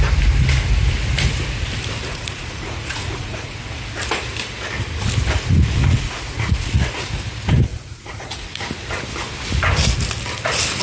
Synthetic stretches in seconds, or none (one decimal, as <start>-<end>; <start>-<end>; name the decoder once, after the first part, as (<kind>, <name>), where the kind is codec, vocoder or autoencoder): 2.1-3.6 (vocoder, Vocos); 5.8-7.0; 7.7-8.6